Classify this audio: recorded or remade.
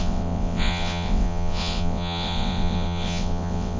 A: remade